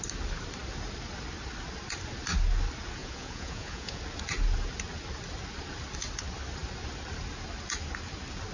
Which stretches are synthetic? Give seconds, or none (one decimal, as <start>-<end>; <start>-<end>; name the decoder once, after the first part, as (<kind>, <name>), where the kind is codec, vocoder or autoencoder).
3.0-4.0 (vocoder, Vocos)